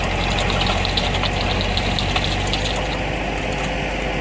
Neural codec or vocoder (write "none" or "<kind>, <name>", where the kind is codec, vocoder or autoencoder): none